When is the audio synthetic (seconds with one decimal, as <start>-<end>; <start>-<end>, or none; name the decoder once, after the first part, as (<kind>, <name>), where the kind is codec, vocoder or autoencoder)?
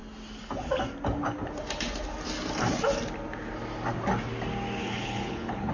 4.8-5.7 (codec, HILCodec)